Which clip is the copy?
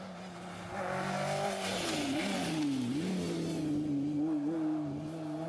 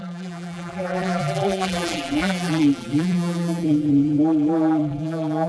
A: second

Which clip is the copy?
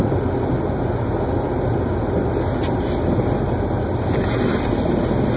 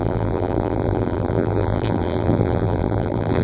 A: second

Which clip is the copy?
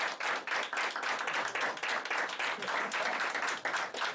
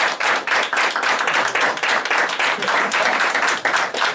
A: second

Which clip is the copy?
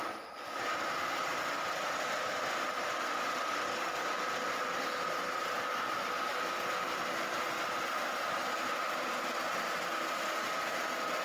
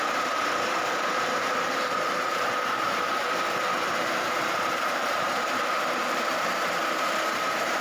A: second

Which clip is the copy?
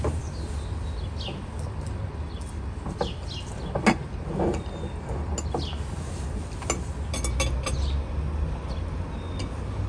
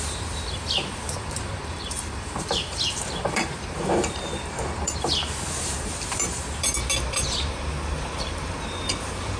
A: second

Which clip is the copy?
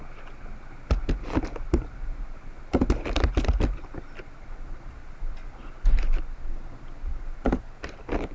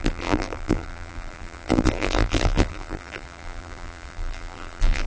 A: second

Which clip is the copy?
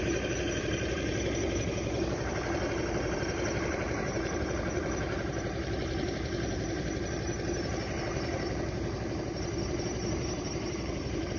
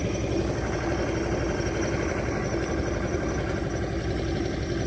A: first